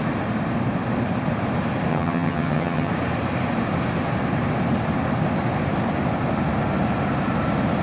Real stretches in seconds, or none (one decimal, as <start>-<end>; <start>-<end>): 0.0-1.9; 2.9-7.8